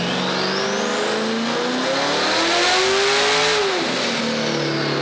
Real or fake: real